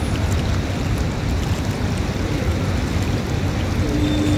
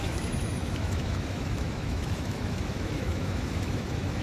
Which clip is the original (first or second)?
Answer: first